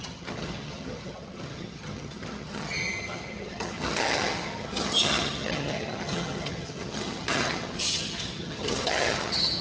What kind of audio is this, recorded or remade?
remade